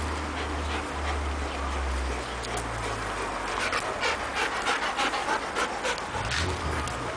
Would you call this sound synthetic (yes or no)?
no